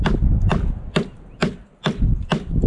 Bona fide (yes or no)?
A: yes